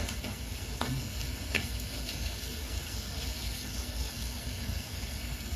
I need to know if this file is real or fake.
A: fake